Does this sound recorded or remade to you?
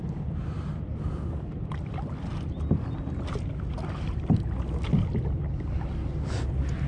recorded